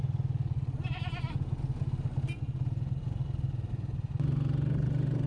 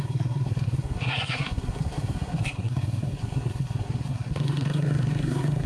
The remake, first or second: second